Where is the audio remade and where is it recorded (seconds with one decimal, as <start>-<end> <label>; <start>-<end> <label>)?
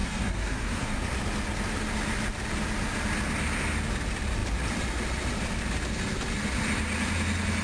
0.0-1.0 remade; 1.0-7.6 recorded